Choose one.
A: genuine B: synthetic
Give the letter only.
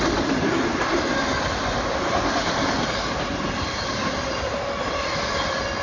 A